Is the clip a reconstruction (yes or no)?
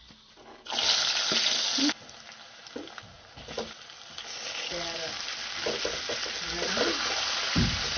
no